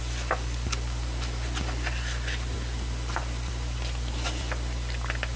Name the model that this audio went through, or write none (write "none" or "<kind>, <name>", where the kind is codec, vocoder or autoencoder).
none